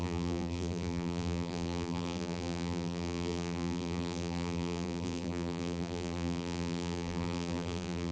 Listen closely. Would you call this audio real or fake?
fake